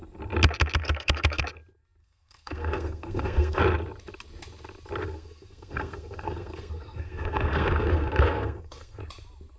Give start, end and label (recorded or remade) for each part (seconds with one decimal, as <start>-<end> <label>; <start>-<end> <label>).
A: 0.0-0.8 recorded; 0.8-1.4 remade; 1.4-2.0 recorded; 2.0-3.6 remade; 3.6-5.0 recorded; 5.0-9.0 remade; 9.0-9.6 recorded